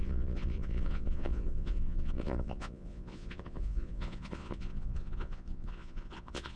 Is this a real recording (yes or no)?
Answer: no